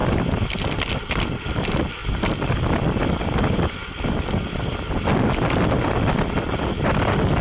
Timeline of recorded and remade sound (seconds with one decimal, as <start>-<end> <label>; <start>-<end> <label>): 0.0-0.9 remade; 0.9-2.0 recorded; 2.0-3.4 remade; 3.4-7.4 recorded